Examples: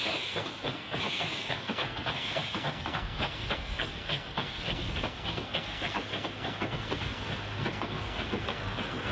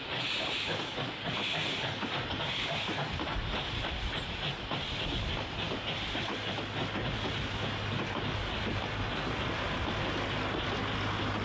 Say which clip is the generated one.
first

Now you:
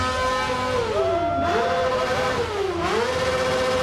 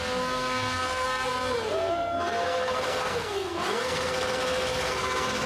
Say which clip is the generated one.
second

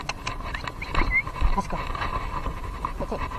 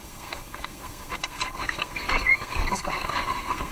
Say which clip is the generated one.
second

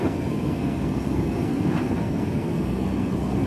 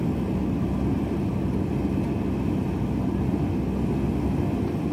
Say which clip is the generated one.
first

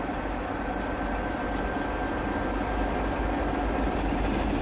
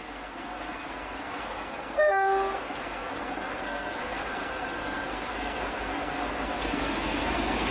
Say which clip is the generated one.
second